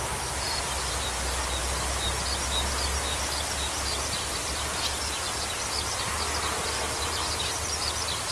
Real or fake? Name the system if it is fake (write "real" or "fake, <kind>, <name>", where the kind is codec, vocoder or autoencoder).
real